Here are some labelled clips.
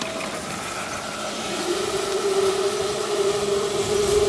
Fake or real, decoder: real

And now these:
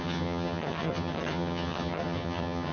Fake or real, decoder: fake, vocoder, HiFi-GAN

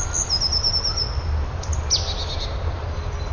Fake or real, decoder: real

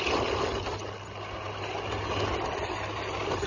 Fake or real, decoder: real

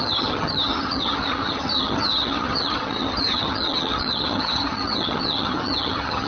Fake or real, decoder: fake, vocoder, HiFi-GAN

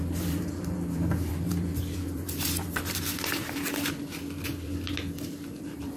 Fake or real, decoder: fake, vocoder, BigVGAN v2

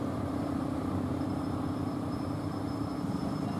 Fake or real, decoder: fake, vocoder, BigVGAN v2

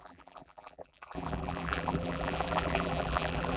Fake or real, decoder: fake, vocoder, BigVGAN v2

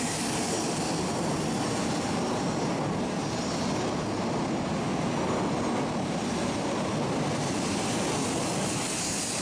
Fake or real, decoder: real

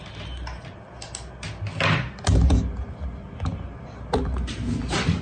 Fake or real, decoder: real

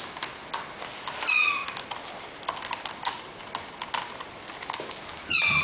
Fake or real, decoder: real